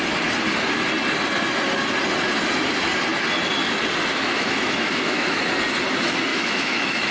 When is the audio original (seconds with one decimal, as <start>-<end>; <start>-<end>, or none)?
0.0-4.1; 5.4-6.3